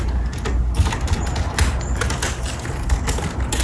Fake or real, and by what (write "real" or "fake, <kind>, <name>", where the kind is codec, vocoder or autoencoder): real